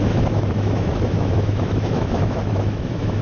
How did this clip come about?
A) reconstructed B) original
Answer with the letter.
A